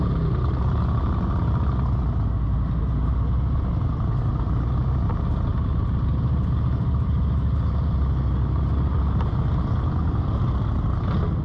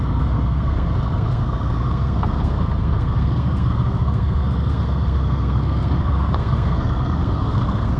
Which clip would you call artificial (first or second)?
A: second